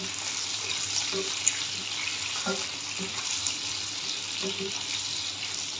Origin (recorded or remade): recorded